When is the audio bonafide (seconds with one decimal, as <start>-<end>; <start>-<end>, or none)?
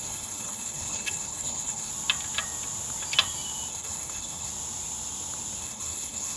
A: 1.9-3.7; 4.5-5.6